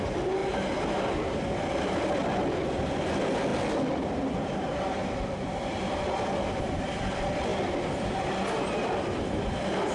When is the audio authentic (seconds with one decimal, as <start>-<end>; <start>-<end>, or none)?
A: 0.0-9.9